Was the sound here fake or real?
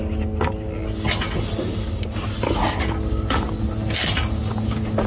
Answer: real